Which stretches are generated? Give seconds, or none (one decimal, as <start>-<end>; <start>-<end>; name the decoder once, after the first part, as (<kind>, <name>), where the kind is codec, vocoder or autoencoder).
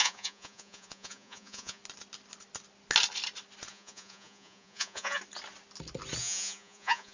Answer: 0.0-1.8 (vocoder, Vocos); 3.7-5.2; 6.2-7.1